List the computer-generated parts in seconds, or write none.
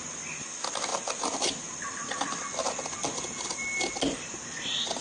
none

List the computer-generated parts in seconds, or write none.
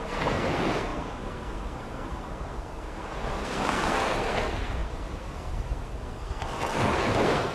0.0-7.5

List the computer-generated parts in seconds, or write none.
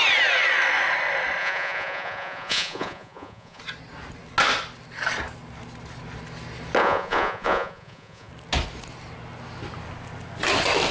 1.4-3.6; 6.8-8.3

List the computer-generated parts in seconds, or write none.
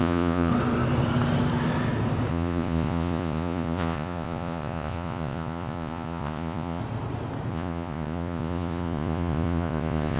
0.0-0.5; 2.3-6.8; 7.5-10.2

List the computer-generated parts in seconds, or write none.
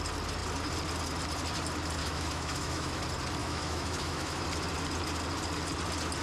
2.0-3.0; 3.4-4.4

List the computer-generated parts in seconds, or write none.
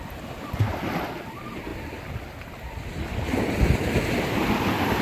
none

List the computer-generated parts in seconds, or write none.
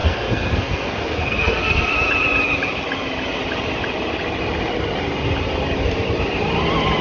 0.0-1.9